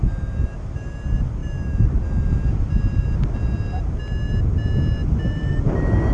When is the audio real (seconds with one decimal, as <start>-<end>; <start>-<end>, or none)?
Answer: 0.0-5.0; 5.5-6.1